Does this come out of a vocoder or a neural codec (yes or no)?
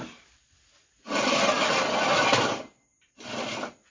no